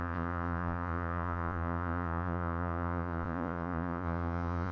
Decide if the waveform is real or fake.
fake